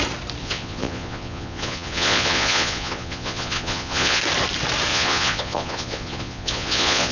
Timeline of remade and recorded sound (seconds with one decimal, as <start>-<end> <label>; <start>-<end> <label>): 0.0-0.4 recorded; 0.4-4.2 remade; 4.2-4.9 recorded; 4.9-7.1 remade